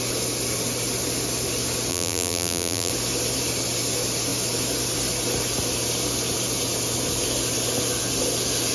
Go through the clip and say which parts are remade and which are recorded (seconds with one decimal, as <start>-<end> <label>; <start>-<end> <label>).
0.0-1.9 recorded; 1.9-2.9 remade; 2.9-8.7 recorded